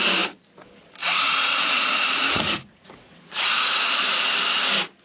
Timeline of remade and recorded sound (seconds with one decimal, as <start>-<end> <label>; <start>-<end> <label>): 0.0-1.0 recorded; 1.0-4.0 remade; 4.0-5.0 recorded